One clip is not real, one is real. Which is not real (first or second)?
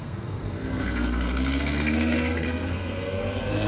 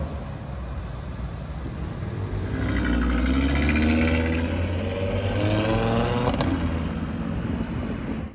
first